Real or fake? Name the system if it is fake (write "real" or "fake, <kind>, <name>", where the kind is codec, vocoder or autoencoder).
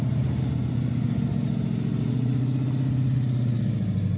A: real